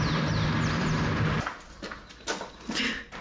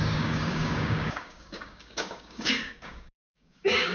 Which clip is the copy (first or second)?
second